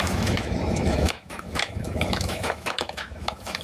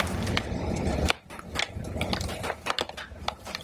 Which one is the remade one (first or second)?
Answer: first